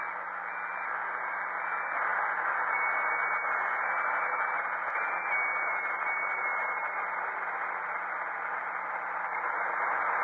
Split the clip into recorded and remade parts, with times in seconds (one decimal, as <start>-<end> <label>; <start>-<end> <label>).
0.0-10.2 recorded